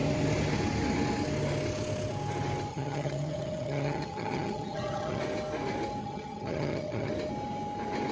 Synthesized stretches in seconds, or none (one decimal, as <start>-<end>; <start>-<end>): 2.7-5.2; 6.0-7.1